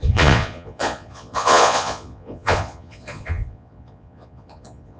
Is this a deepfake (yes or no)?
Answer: yes